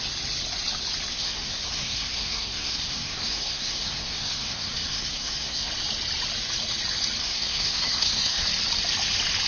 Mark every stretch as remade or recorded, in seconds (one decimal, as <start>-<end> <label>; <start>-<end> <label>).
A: 0.0-1.1 recorded; 1.1-5.7 remade; 5.7-7.2 recorded; 7.2-8.4 remade; 8.4-9.5 recorded